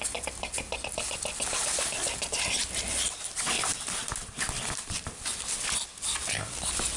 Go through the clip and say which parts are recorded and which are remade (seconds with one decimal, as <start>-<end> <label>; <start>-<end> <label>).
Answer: 0.0-7.0 recorded